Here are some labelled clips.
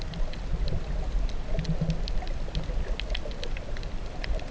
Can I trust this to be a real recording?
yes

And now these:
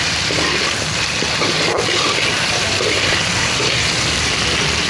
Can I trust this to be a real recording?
yes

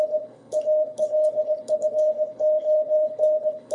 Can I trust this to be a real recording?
no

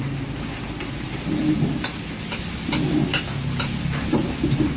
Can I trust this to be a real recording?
yes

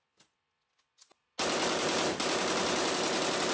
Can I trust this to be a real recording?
yes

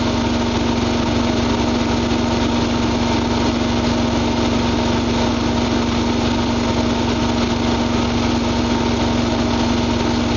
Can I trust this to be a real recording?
yes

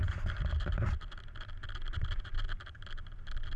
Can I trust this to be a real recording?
yes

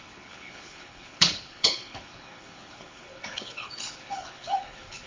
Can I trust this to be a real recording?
no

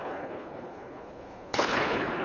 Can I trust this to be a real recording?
no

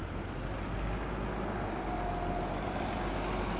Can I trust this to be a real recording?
yes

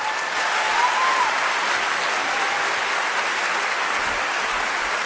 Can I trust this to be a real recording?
yes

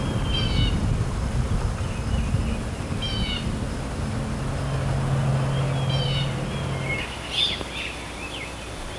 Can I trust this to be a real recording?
yes